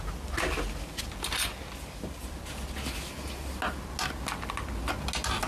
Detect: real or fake real